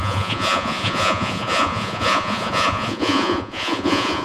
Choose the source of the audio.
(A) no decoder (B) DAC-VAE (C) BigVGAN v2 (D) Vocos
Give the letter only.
D